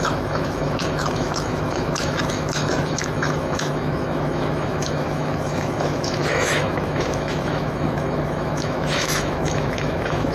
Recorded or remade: remade